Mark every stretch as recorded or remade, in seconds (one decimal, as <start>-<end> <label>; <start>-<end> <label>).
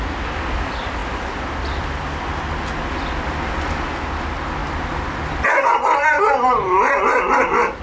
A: 0.0-7.8 recorded